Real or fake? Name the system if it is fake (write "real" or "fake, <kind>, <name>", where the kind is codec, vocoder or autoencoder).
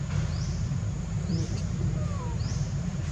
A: fake, vocoder, BigVGAN v2